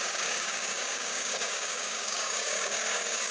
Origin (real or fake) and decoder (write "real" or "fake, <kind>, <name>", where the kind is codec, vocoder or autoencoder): fake, codec, DAC